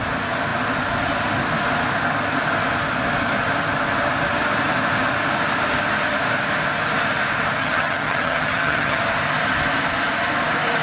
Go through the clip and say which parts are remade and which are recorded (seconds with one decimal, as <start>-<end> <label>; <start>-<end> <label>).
0.0-7.6 recorded; 7.6-9.0 remade; 9.0-10.8 recorded